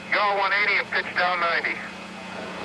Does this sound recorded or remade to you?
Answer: remade